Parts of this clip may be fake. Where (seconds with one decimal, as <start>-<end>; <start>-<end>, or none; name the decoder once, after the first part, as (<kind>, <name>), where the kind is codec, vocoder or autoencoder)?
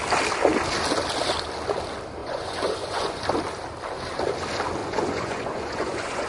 2.2-3.2 (vocoder, Vocos); 4.8-6.3